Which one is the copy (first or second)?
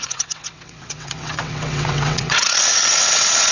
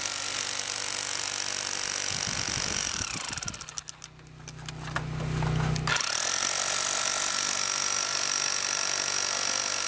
first